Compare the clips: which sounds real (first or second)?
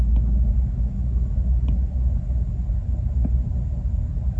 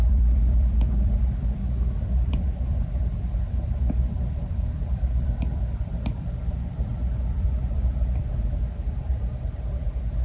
first